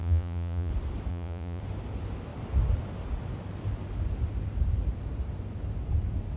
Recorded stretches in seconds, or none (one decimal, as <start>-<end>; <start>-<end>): 0.7-1.1; 1.6-6.4